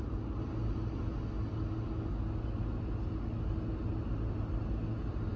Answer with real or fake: real